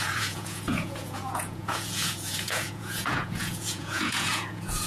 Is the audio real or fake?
fake